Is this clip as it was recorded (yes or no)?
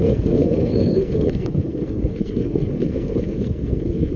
no